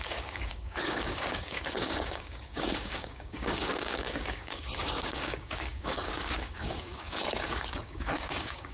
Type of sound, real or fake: fake